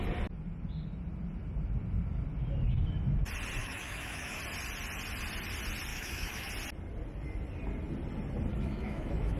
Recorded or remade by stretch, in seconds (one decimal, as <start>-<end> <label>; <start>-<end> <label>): 0.0-3.6 recorded; 3.6-4.4 remade; 4.4-5.9 recorded; 5.9-6.5 remade; 6.5-8.5 recorded; 8.5-9.4 remade